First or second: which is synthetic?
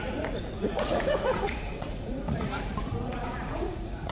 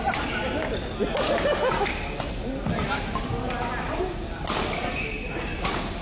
first